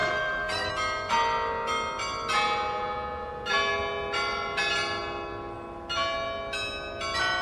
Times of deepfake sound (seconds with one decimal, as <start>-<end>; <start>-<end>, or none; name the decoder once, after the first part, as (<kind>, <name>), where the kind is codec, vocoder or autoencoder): 0.0-0.7 (codec, SNAC)